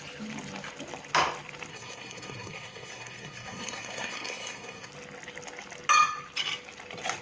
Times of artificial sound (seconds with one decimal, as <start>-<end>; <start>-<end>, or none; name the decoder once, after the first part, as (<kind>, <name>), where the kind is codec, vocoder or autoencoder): 1.7-4.9 (codec, SNAC)